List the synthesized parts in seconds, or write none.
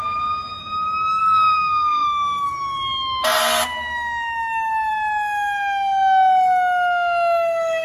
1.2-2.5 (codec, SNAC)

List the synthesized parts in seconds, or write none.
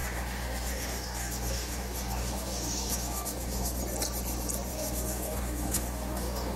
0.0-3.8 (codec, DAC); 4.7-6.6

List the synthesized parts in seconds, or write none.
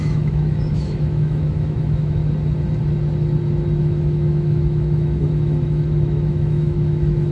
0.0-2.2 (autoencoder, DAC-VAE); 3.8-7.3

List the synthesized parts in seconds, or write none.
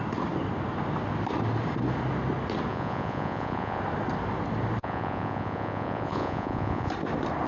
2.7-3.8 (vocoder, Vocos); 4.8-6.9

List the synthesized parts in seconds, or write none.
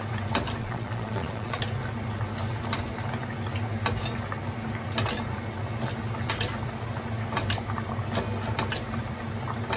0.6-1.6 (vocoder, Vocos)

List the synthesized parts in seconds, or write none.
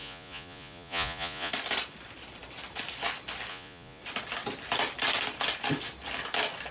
0.0-1.5 (vocoder, Vocos); 3.5-4.0